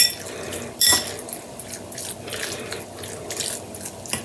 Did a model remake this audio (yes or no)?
no